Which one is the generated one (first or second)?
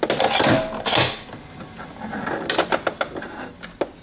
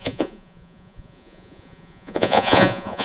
second